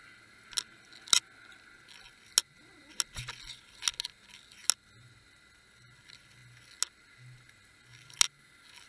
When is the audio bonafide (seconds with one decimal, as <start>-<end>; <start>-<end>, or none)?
0.0-8.9